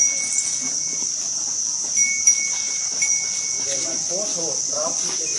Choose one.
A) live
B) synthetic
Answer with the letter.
A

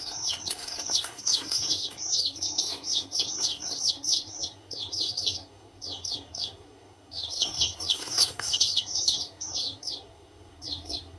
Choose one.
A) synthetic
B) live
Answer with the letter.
A